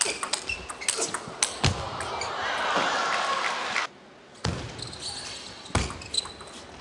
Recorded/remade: recorded